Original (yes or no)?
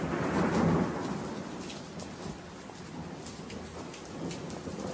yes